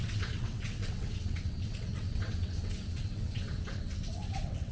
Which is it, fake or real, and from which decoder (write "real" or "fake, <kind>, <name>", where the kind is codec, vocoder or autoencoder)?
fake, vocoder, WaveNeXt